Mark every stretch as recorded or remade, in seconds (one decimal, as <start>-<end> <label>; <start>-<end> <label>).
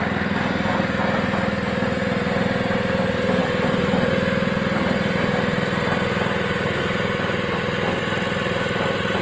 0.0-9.2 recorded